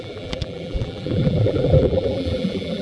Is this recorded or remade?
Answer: remade